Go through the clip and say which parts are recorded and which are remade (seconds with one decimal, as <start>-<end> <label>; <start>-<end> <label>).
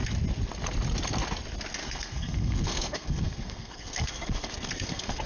0.0-1.8 recorded; 1.8-5.3 remade